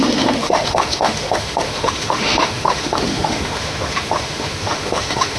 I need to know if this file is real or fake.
fake